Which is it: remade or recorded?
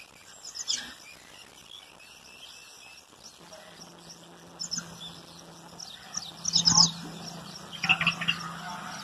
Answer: recorded